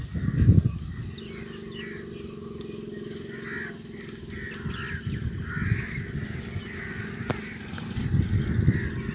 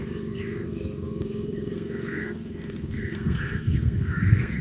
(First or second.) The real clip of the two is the first